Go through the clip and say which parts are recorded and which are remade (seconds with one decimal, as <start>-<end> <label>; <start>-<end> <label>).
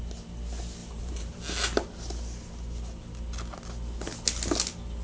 0.0-0.8 recorded; 0.8-1.3 remade; 1.3-5.0 recorded